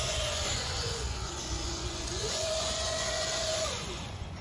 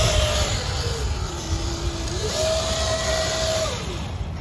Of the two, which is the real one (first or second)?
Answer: second